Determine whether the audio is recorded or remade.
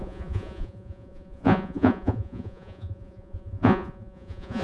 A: remade